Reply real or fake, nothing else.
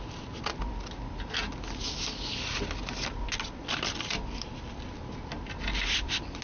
real